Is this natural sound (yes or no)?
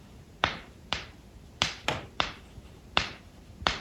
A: no